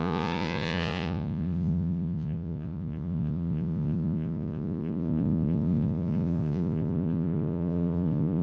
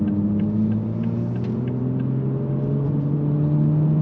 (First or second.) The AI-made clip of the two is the first